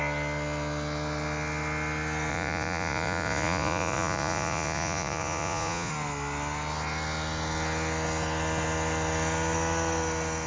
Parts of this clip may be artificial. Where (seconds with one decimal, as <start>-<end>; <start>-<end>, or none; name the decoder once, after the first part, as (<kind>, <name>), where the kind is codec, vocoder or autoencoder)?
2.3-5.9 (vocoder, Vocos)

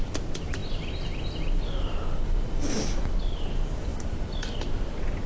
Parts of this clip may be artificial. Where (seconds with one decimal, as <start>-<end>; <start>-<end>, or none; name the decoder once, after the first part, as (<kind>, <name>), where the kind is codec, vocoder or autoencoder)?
none

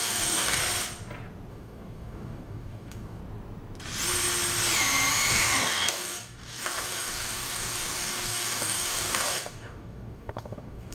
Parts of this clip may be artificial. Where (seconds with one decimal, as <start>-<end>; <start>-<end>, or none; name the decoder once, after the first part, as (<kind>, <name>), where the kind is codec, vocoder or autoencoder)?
0.0-0.6 (codec, DAC); 1.5-3.2; 5.3-10.9

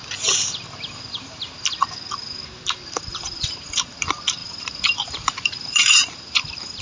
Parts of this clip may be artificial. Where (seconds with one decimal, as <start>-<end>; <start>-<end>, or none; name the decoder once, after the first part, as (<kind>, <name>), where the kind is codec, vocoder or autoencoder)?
3.1-4.0 (vocoder, BigVGAN v2); 4.4-6.8

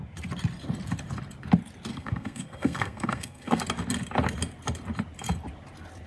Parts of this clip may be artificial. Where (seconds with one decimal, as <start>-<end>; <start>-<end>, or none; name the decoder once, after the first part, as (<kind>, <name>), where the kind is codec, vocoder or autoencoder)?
1.9-3.6 (codec, SNAC)

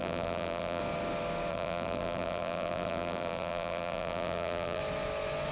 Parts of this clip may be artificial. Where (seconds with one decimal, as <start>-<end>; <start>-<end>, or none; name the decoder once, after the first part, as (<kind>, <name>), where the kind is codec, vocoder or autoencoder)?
0.0-0.8 (vocoder, BigVGAN v2); 1.5-4.8

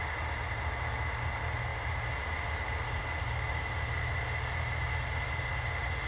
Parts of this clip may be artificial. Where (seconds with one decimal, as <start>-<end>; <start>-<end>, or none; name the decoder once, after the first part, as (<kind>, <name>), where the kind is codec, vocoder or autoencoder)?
none